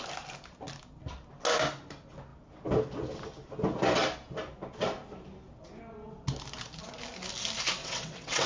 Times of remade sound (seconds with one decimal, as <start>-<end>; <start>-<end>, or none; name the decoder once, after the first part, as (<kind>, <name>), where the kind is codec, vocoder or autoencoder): 7.8-8.5 (vocoder, WaveNeXt)